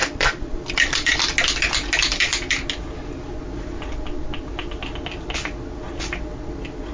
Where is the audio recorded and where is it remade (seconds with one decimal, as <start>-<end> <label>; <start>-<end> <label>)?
0.0-0.7 remade; 0.7-6.9 recorded